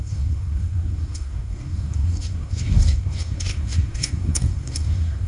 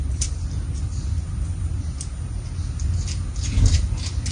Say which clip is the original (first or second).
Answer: second